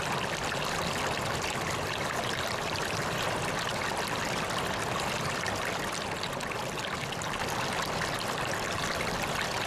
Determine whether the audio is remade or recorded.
recorded